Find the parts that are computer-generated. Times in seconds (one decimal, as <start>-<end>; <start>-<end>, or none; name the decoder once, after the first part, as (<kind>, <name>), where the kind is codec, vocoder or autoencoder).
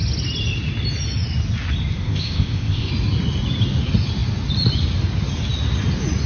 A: 2.0-2.9 (codec, ZipCodec)